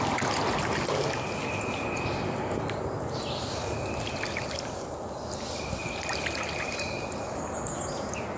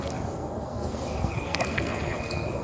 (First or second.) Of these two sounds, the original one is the first